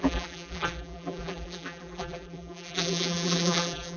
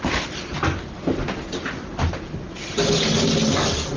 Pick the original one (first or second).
second